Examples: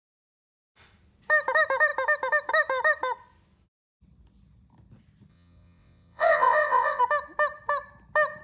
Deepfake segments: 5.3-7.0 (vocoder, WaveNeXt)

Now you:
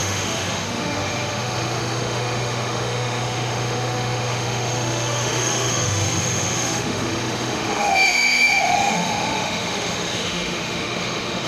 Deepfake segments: 0.0-11.5 (autoencoder, DAC-VAE)

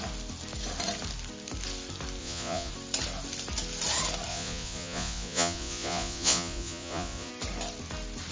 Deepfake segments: 2.2-2.7 (vocoder, Vocos); 4.3-7.3

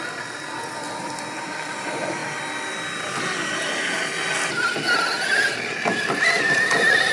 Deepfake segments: none